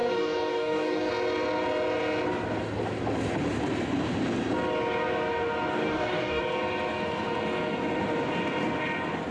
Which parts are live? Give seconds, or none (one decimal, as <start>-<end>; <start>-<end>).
1.1-5.7; 6.4-9.3